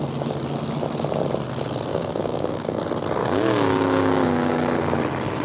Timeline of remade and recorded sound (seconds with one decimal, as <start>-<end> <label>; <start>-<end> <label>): 0.0-1.9 recorded; 1.9-2.8 remade; 2.8-3.2 recorded; 3.2-5.0 remade; 5.0-5.4 recorded